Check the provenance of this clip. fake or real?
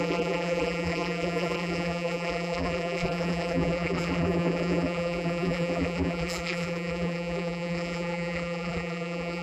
fake